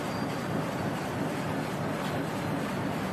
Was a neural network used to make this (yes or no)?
no